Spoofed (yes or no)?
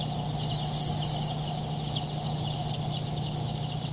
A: no